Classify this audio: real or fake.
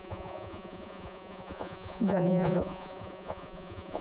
fake